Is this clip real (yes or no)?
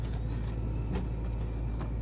yes